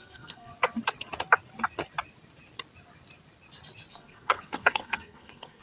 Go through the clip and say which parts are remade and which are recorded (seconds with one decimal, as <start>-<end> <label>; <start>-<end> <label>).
0.0-0.5 remade; 0.5-3.9 recorded; 3.9-5.6 remade